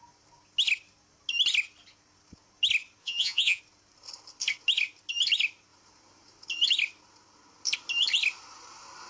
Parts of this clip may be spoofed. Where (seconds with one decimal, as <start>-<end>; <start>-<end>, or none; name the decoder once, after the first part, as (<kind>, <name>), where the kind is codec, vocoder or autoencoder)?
3.0-3.6 (vocoder, Vocos)